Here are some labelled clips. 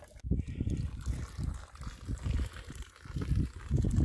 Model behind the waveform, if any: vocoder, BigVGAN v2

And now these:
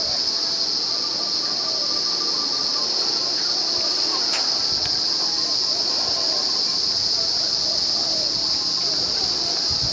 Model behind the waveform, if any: none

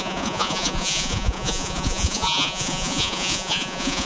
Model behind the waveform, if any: vocoder, Vocos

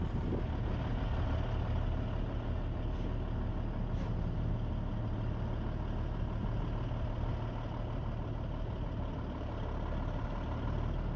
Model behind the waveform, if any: none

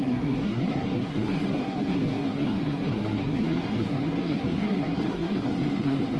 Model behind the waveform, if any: codec, SNAC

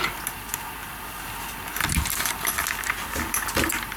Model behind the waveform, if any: none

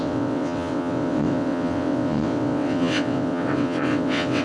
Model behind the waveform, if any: vocoder, WaveNeXt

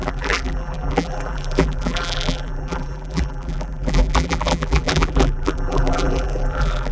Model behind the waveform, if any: vocoder, BigVGAN v2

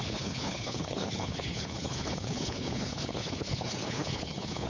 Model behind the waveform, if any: codec, HILCodec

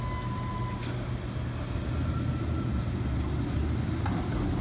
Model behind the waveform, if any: none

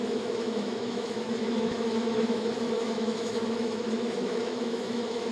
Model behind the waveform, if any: autoencoder, DAC-VAE